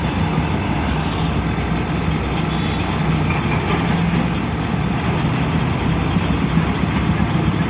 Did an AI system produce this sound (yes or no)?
no